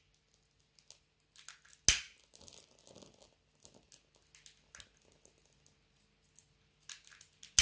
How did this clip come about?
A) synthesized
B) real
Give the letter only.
B